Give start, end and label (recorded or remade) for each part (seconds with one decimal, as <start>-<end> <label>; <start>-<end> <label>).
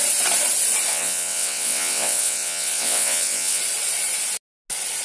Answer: 0.0-0.9 recorded; 0.9-3.6 remade; 3.6-5.0 recorded